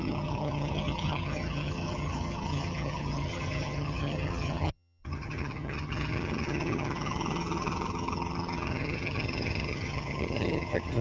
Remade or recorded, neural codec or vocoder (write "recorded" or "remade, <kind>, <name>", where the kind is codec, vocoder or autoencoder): remade, vocoder, HiFi-GAN